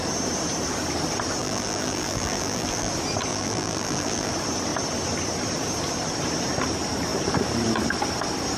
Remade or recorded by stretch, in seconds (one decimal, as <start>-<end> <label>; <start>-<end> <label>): 0.0-1.4 recorded; 1.4-2.9 remade; 2.9-3.3 recorded; 3.3-4.3 remade; 4.3-8.6 recorded

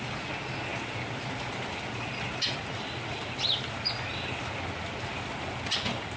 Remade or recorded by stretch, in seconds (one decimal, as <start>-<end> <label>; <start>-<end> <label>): 0.0-6.2 recorded

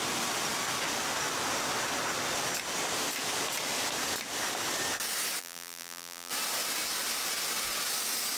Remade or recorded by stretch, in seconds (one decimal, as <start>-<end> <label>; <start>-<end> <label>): 0.0-5.4 recorded; 5.4-6.3 remade; 6.3-8.4 recorded

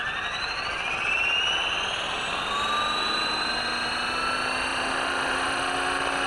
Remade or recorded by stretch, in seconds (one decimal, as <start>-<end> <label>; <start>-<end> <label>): 0.0-4.7 recorded; 4.7-5.6 remade; 5.6-6.3 recorded